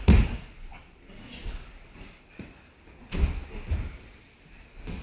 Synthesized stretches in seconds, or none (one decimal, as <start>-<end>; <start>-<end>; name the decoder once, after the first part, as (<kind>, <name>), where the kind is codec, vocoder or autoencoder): none